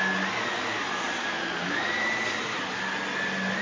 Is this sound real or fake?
real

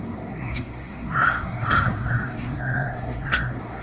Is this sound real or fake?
fake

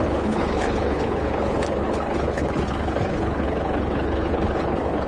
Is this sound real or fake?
fake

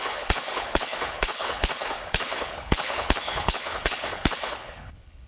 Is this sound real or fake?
fake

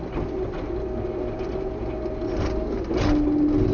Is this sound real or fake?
real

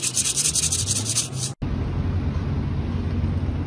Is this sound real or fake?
real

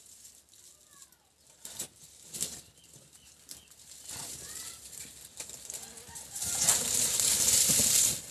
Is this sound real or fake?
fake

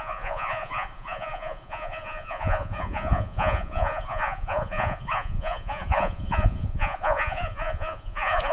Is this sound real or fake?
fake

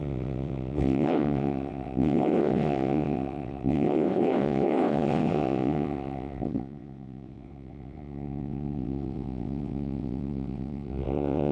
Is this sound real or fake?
fake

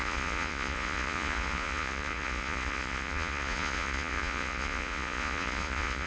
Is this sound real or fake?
fake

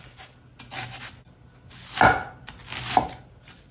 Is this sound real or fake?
real